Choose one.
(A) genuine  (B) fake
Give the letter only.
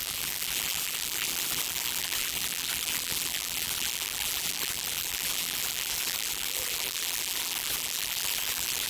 B